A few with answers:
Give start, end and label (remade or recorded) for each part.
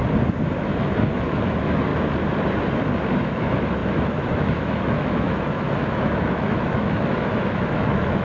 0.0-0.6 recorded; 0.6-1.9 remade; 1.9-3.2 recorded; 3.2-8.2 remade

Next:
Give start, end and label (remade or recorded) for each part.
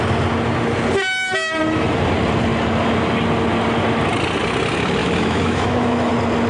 0.0-5.0 recorded; 5.0-6.1 remade; 6.1-6.5 recorded